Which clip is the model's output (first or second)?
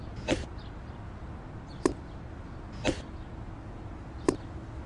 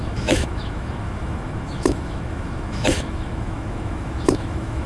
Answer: second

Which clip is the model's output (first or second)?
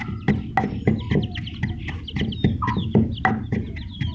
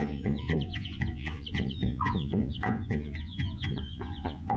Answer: second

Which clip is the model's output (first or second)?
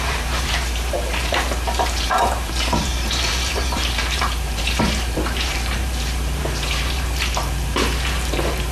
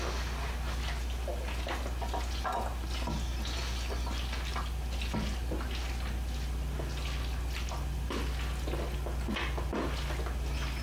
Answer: first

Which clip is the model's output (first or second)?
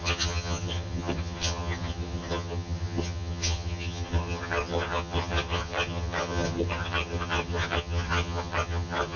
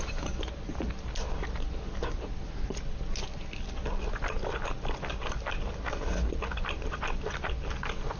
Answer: first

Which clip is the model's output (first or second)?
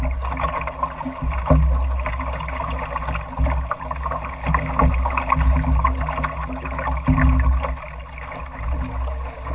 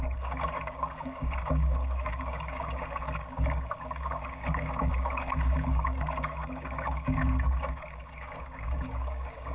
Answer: second